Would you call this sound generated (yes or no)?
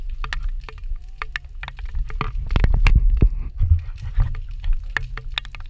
no